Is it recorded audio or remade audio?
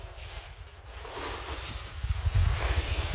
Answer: recorded